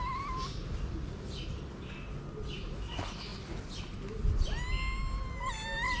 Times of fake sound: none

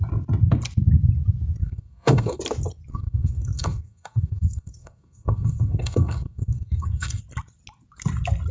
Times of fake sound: 1.6-2.4 (codec, SNAC); 2.9-7.2

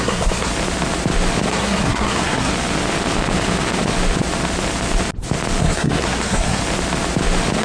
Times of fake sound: 0.0-0.5 (codec, SNAC); 1.5-2.5; 5.6-6.6

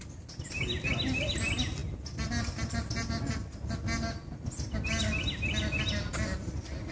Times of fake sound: none